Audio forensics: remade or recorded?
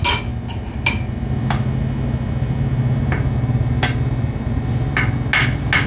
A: recorded